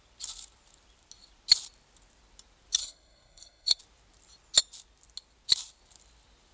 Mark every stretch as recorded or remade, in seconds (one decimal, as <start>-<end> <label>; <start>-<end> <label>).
0.0-2.8 recorded; 2.8-3.8 remade; 3.8-6.5 recorded